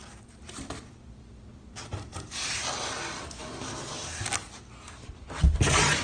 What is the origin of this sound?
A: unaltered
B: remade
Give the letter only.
A